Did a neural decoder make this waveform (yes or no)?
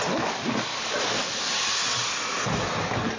no